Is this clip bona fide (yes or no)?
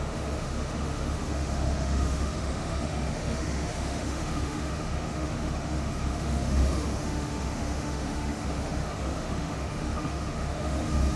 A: no